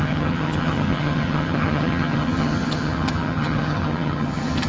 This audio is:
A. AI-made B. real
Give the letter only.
A